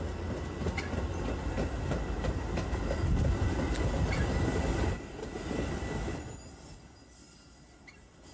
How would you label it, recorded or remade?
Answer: recorded